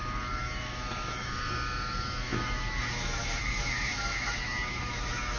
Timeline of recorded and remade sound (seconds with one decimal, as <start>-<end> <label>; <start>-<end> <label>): 0.0-5.4 remade